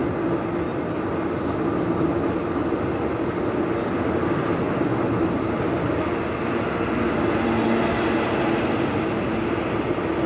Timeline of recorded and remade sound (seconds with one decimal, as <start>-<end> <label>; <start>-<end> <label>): 0.0-10.3 recorded